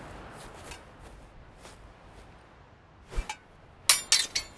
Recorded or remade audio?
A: recorded